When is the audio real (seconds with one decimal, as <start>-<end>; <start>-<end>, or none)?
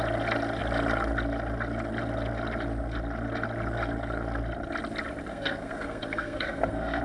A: 0.0-5.3